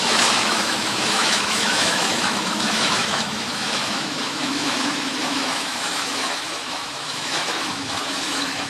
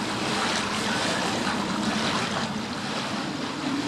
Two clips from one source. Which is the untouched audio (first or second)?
second